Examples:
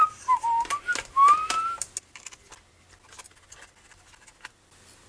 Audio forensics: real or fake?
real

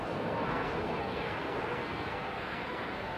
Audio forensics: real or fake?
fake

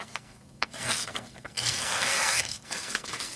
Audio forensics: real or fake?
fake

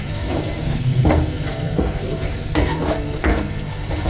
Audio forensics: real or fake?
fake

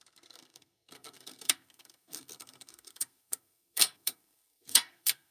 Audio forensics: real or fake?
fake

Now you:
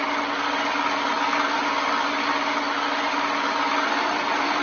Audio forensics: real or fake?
real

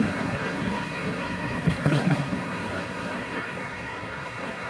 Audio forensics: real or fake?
fake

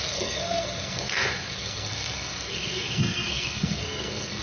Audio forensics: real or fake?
fake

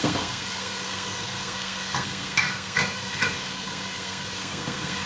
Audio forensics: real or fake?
fake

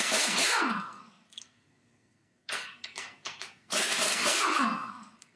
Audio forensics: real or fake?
fake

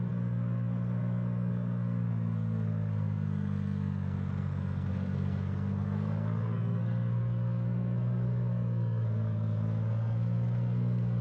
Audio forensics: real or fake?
fake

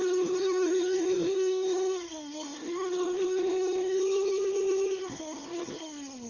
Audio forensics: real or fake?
fake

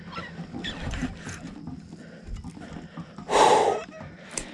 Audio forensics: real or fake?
real